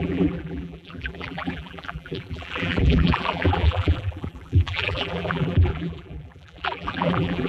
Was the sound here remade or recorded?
remade